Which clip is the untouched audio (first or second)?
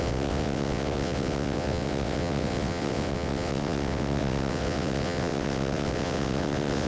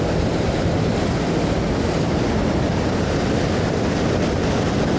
second